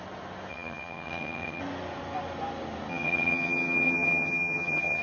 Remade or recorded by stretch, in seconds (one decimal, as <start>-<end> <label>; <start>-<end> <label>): 0.0-0.5 recorded; 0.5-1.6 remade; 1.6-2.9 recorded; 2.9-5.0 remade

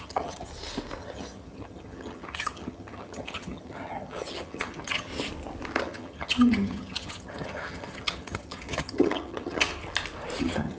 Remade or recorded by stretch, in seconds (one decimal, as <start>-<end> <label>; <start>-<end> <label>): 0.0-0.5 remade; 0.5-1.0 recorded; 1.0-5.1 remade; 5.1-5.8 recorded; 5.8-9.7 remade; 9.7-10.4 recorded; 10.4-10.8 remade